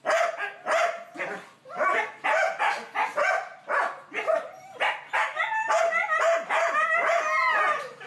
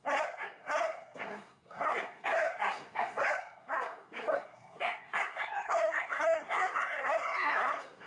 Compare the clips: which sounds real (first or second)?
first